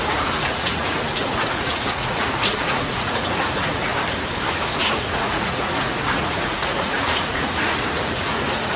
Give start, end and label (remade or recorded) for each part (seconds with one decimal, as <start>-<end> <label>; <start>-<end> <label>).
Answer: 0.0-3.9 remade; 3.9-4.5 recorded; 4.5-8.8 remade